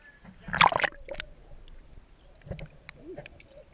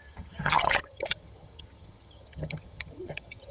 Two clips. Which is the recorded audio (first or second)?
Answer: first